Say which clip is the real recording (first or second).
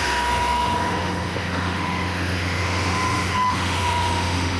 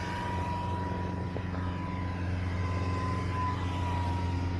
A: second